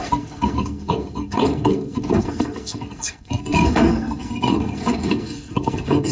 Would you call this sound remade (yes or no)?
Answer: yes